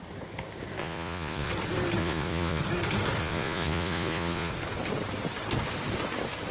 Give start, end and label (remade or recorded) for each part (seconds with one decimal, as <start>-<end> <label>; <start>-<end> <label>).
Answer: 0.0-0.8 recorded; 0.8-1.5 remade; 1.5-2.0 recorded; 2.0-2.6 remade; 2.6-3.2 recorded; 3.2-4.5 remade; 4.5-6.5 recorded